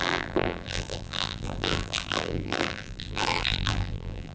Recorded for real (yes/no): no